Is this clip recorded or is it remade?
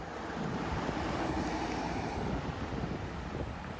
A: remade